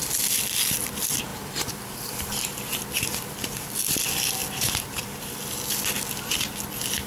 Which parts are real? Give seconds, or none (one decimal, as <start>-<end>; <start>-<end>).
0.0-1.3; 2.6-4.4; 5.4-7.1